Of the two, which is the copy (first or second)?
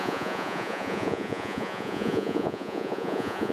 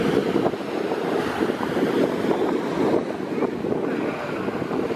first